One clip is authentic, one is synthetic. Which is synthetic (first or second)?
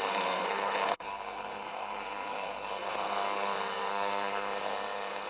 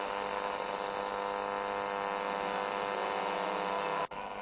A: first